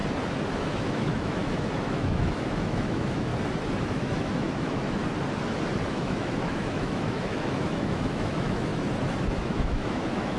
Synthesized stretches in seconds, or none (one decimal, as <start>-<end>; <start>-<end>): 0.5-3.3; 3.8-5.0; 5.9-8.7; 9.4-10.4